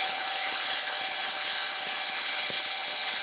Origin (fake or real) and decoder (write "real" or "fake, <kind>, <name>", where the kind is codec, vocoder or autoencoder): fake, codec, HILCodec